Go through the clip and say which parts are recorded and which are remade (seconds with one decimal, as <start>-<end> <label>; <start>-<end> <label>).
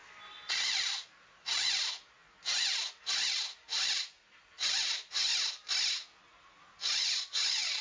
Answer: 0.0-0.5 recorded; 0.5-5.3 remade; 5.3-5.9 recorded; 5.9-7.8 remade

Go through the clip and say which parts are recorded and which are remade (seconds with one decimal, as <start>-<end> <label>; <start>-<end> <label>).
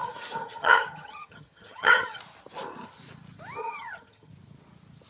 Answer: 0.0-2.2 remade; 2.2-3.6 recorded; 3.6-4.3 remade; 4.3-5.1 recorded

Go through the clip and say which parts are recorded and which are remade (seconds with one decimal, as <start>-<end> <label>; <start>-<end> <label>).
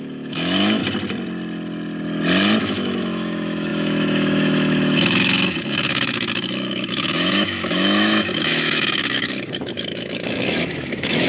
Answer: 0.0-0.8 remade; 0.8-2.6 recorded; 2.6-11.3 remade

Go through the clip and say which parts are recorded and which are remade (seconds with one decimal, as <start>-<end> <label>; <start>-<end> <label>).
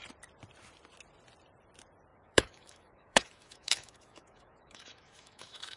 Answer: 0.0-2.1 recorded; 2.1-5.8 remade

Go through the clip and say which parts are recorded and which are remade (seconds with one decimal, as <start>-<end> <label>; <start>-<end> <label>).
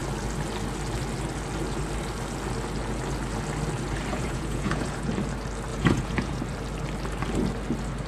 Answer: 0.0-4.1 recorded; 4.1-5.1 remade; 5.1-5.7 recorded; 5.7-6.4 remade; 6.4-8.1 recorded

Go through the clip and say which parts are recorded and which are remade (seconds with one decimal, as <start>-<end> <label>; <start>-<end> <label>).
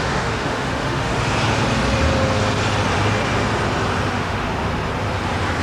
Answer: 0.0-1.1 remade; 1.1-4.1 recorded; 4.1-4.5 remade; 4.5-5.6 recorded